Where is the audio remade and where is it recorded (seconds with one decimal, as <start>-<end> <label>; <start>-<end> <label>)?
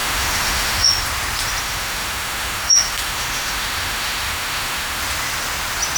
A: 0.0-0.9 remade; 0.9-1.6 recorded; 1.6-5.0 remade; 5.0-6.0 recorded